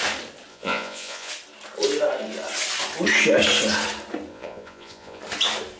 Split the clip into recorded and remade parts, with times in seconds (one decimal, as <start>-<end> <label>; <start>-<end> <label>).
0.0-0.5 recorded; 0.5-1.3 remade; 1.3-4.3 recorded; 4.3-5.2 remade; 5.2-5.8 recorded